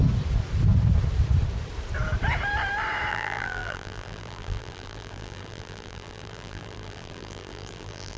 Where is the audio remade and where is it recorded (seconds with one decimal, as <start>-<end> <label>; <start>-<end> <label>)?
0.0-3.1 recorded; 3.1-8.2 remade